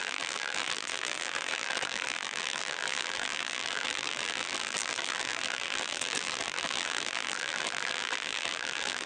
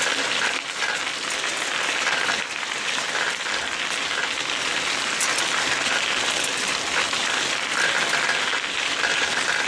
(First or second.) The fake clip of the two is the first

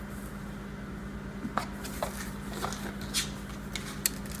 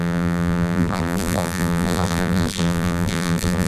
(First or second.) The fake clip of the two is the second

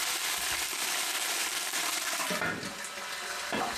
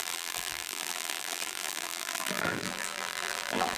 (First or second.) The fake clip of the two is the second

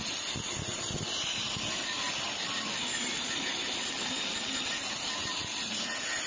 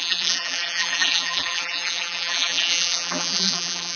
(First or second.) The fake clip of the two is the second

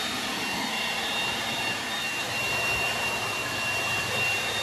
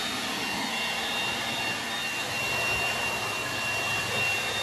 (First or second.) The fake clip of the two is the first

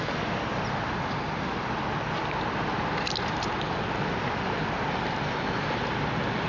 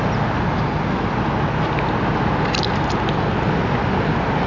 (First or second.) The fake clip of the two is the first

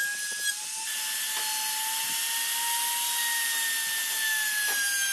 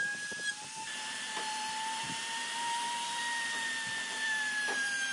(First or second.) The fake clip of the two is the second